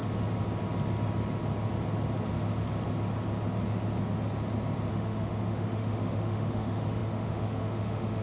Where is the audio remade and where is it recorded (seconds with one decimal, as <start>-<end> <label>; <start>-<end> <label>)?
0.0-4.9 recorded; 4.9-8.2 remade